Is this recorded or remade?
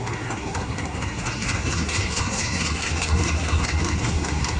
remade